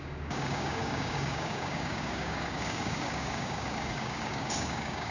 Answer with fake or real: fake